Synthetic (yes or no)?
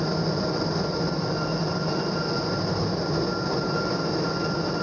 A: no